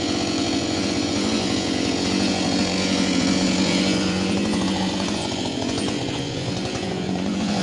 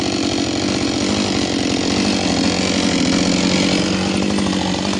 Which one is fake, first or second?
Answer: first